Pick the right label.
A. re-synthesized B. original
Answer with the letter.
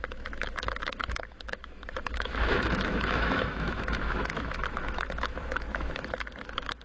A